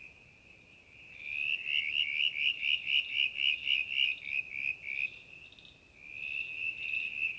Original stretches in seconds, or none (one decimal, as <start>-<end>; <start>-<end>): 0.0-7.4